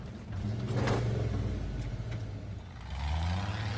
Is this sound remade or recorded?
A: recorded